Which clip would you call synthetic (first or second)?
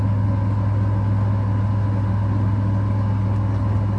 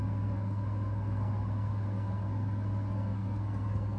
second